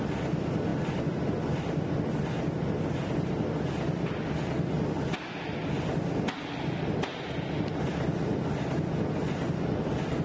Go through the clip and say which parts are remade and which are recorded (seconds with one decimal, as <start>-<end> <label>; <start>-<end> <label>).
0.0-10.2 recorded